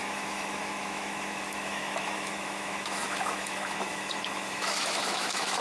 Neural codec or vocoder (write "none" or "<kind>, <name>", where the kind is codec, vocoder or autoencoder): autoencoder, DAC-VAE